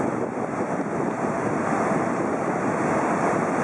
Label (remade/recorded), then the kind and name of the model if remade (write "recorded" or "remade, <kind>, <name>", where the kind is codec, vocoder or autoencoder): recorded